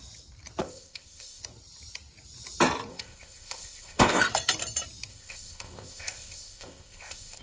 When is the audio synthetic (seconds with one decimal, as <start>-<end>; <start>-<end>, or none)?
0.6-1.4; 2.9-4.2; 5.1-7.4